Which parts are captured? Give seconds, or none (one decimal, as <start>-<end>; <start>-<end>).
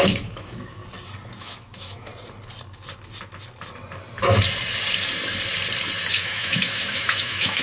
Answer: 0.8-1.4; 2.1-6.1